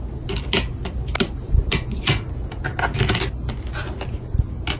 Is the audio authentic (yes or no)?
yes